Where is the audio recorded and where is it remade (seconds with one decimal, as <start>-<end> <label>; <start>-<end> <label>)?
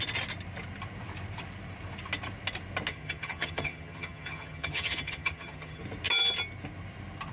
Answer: 0.0-2.9 recorded; 2.9-5.8 remade; 5.8-7.3 recorded